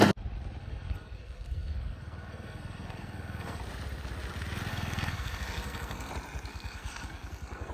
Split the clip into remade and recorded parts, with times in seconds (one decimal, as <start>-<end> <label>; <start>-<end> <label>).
0.0-0.6 recorded; 0.6-3.6 remade; 3.6-4.7 recorded; 4.7-6.1 remade; 6.1-6.5 recorded; 6.5-7.7 remade